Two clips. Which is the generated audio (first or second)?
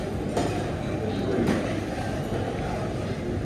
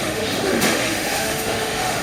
second